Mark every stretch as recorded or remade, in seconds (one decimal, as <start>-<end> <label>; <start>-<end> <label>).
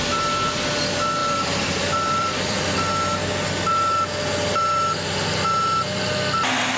0.0-1.2 recorded; 1.2-2.7 remade; 2.7-6.8 recorded